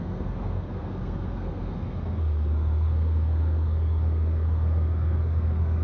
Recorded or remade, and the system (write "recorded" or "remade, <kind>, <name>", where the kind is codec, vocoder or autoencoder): remade, codec, SNAC